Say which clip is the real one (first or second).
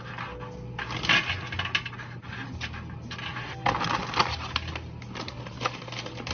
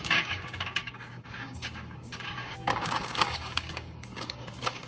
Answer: first